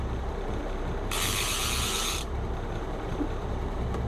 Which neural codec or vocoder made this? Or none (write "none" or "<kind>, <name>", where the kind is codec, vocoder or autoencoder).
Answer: vocoder, BigVGAN v2